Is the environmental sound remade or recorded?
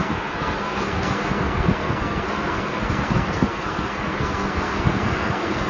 remade